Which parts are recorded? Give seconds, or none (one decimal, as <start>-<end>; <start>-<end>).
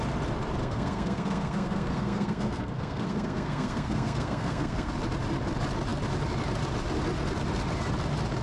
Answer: 0.0-0.6; 4.9-8.4